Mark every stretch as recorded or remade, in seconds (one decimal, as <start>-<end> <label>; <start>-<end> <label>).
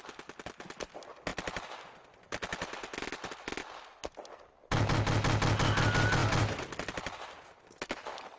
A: 0.0-8.4 recorded